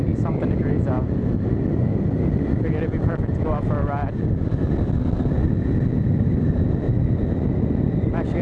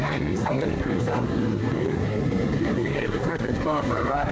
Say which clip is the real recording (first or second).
first